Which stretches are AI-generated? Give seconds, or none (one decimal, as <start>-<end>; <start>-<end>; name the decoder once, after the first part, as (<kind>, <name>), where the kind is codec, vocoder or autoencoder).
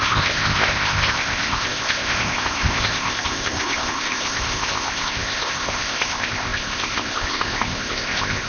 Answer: 0.0-8.5 (codec, ZipCodec)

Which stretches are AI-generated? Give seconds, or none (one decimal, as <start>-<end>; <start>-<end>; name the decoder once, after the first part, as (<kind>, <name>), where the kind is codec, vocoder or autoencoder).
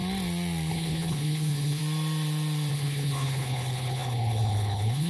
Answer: 0.7-1.8 (codec, HILCodec); 2.7-5.1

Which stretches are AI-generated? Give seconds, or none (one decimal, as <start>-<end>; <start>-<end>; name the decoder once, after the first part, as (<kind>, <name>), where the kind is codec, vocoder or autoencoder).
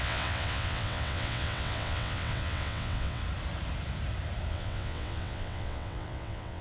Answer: 0.0-3.2 (vocoder, WaveNeXt); 4.5-6.6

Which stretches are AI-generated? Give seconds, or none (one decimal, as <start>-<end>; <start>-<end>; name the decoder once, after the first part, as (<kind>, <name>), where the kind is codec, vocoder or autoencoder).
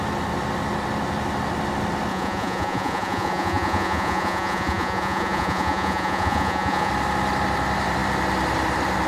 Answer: 2.1-6.9 (vocoder, Vocos)